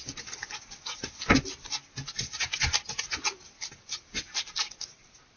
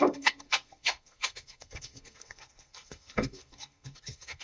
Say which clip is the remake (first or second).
second